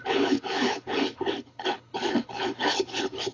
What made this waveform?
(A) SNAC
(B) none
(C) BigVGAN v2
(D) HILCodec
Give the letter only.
D